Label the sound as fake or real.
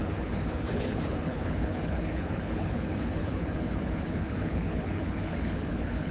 fake